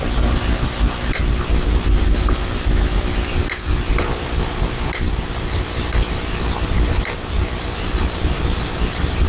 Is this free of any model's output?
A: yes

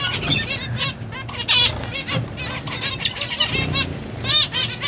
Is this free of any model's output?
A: yes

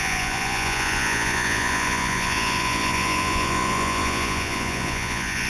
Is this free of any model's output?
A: no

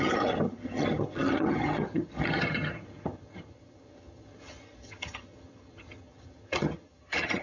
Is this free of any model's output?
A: no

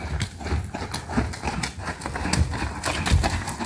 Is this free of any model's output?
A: yes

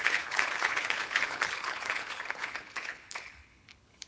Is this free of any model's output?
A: no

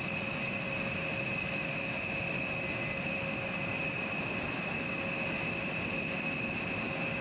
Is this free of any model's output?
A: yes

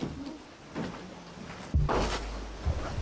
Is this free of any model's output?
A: yes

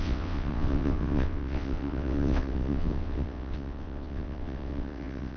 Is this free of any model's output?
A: no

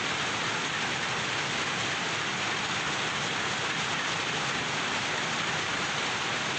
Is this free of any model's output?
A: yes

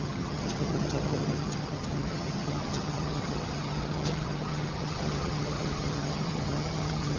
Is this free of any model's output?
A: no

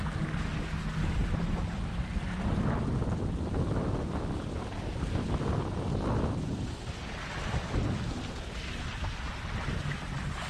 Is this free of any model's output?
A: yes